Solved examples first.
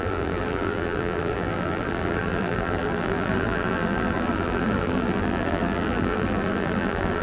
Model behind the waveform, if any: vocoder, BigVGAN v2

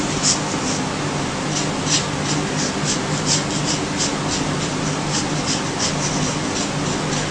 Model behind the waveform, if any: none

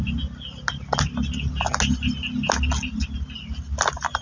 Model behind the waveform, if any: none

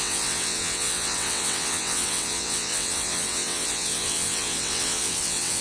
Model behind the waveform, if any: vocoder, WaveNeXt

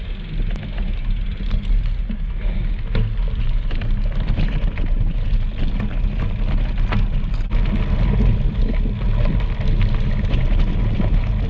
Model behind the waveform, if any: none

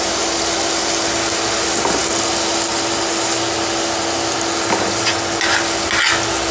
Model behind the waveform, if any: none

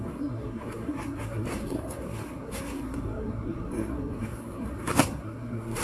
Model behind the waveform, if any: codec, SNAC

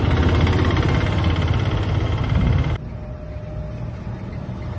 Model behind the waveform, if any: none